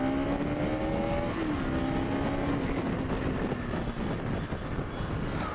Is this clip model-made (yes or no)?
no